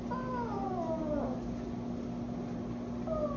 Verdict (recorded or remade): recorded